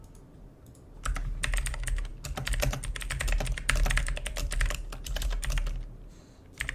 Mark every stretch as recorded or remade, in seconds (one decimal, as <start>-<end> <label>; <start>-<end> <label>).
0.0-6.7 recorded